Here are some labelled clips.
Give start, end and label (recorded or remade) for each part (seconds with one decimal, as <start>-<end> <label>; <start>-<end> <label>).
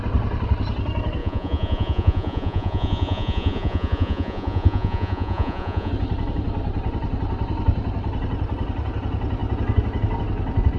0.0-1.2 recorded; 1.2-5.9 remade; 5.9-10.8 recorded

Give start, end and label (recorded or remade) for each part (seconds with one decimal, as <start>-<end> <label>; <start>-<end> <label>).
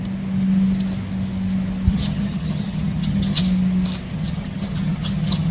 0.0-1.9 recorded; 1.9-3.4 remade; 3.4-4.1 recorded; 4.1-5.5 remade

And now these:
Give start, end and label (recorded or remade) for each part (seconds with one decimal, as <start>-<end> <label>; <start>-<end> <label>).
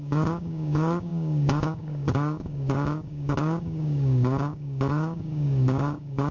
0.0-6.3 remade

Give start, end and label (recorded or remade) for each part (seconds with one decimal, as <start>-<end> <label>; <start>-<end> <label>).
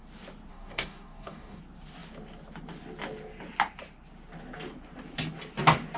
0.0-0.5 recorded; 0.5-1.6 remade; 1.6-6.0 recorded